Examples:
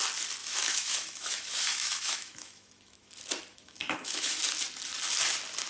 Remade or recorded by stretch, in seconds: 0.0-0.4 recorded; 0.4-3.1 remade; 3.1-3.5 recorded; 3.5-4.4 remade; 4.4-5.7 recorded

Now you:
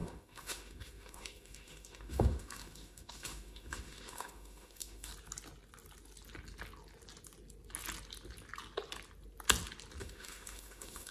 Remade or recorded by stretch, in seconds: 0.0-5.1 remade; 5.1-10.0 recorded; 10.0-11.1 remade

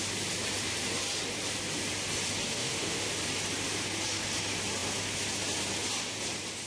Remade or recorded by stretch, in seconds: 0.0-2.6 recorded; 2.6-3.1 remade; 3.1-6.7 recorded